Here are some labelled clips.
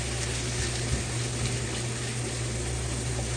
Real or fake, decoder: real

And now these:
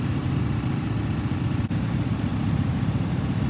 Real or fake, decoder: real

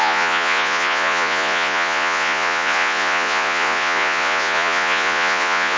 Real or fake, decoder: fake, vocoder, Vocos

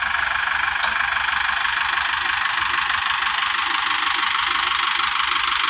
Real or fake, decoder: real